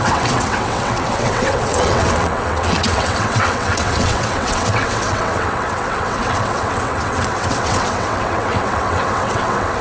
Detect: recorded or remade remade